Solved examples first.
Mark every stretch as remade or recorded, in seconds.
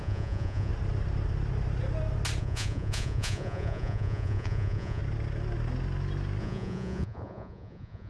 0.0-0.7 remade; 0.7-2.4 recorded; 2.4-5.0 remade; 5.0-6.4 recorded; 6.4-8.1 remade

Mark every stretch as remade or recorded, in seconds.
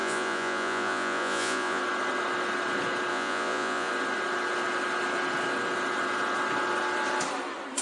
0.0-1.8 remade; 1.8-3.1 recorded; 3.1-3.9 remade; 3.9-7.8 recorded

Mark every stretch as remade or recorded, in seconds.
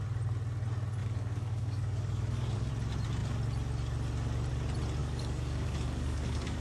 0.0-1.0 recorded; 1.0-2.7 remade; 2.7-5.0 recorded; 5.0-6.6 remade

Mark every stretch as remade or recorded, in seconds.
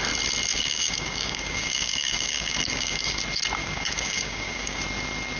0.0-0.5 recorded; 0.5-3.2 remade; 3.2-3.6 recorded; 3.6-4.8 remade; 4.8-5.4 recorded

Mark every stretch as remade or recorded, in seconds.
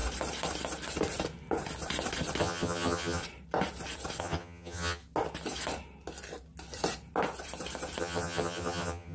0.0-2.4 recorded; 2.4-3.2 remade; 3.2-4.2 recorded; 4.2-5.0 remade; 5.0-8.0 recorded; 8.0-9.1 remade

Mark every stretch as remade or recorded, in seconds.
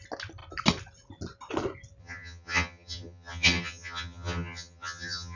0.0-2.0 recorded; 2.0-5.4 remade